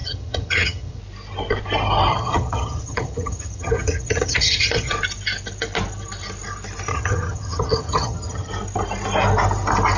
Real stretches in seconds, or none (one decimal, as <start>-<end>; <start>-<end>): 1.0-2.1; 4.9-6.9; 8.5-10.0